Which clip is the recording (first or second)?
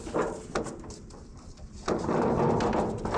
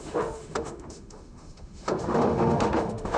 first